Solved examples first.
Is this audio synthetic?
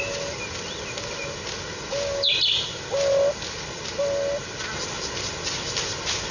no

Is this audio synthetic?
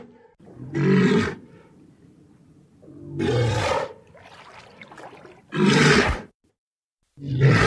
no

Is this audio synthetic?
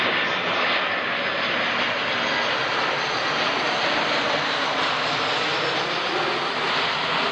no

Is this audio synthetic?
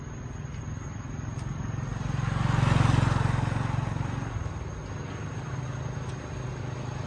no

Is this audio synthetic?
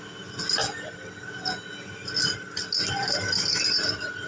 no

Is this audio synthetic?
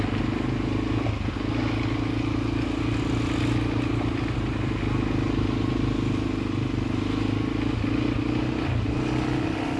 no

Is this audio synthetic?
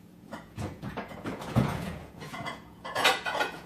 yes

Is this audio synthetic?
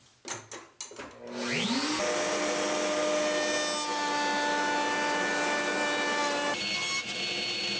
no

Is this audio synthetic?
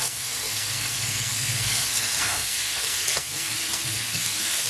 yes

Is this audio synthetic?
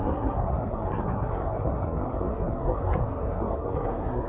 yes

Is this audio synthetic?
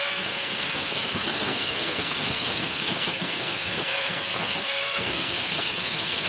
yes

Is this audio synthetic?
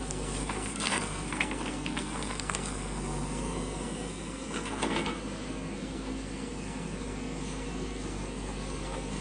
yes